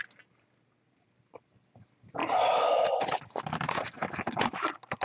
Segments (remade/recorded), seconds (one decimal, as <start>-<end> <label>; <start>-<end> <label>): 0.0-5.0 recorded